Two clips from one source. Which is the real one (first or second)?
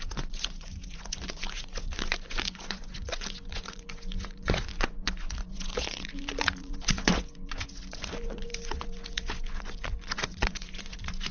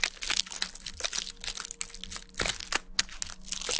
second